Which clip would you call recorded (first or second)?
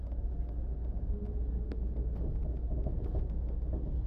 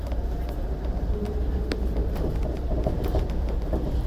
first